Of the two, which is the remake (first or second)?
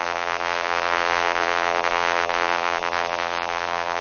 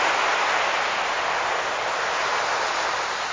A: first